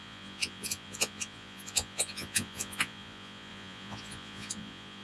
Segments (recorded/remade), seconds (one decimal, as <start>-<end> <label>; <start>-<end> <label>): 0.0-5.0 remade